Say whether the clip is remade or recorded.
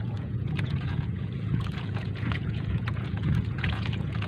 remade